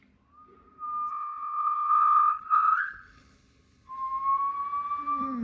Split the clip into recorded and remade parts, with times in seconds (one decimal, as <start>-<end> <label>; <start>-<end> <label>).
0.0-1.1 recorded; 1.1-3.9 remade; 3.9-5.4 recorded